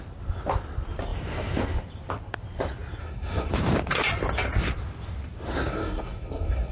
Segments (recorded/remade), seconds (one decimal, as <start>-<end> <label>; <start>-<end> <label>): 0.0-3.0 recorded; 3.0-3.5 remade; 3.5-5.7 recorded; 5.7-6.7 remade

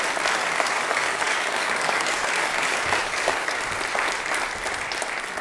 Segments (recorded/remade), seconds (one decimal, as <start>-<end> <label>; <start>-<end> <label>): 0.0-0.4 recorded; 0.4-3.6 remade; 3.6-5.4 recorded

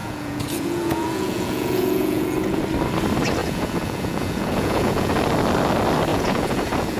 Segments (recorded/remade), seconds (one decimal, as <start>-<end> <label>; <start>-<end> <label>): 0.0-2.6 remade; 2.6-3.4 recorded; 3.4-5.1 remade; 5.1-6.1 recorded; 6.1-7.0 remade

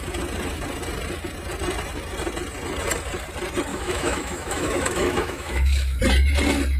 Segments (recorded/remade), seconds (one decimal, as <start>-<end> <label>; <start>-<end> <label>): 0.0-3.7 recorded; 3.7-6.0 remade; 6.0-6.8 recorded

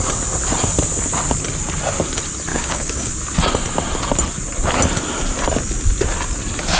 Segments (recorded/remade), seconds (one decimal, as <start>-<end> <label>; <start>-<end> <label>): 0.0-2.5 recorded; 2.5-3.1 remade; 3.1-6.8 recorded